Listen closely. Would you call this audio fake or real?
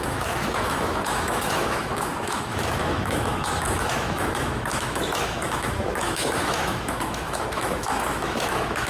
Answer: fake